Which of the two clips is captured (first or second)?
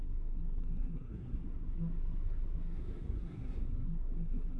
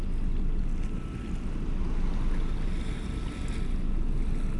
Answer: second